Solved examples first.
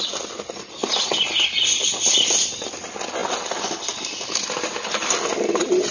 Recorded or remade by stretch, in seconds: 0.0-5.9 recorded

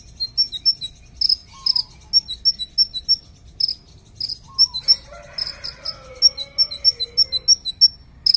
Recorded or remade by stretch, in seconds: 0.0-8.4 recorded

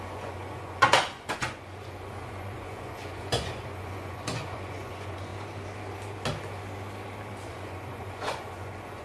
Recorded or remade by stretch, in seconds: 0.0-5.3 remade; 5.3-7.5 recorded; 7.5-9.0 remade

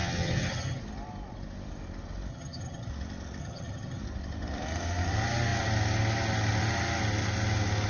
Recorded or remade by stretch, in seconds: 0.0-0.8 remade; 0.8-2.3 recorded; 2.3-2.9 remade; 2.9-3.4 recorded; 3.4-4.0 remade; 4.0-7.9 recorded